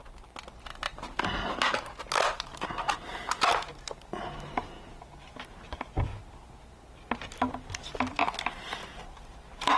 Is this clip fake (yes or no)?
no